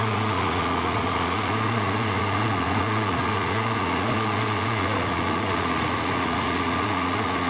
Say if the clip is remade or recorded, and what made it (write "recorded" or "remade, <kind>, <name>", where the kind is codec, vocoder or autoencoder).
remade, vocoder, Vocos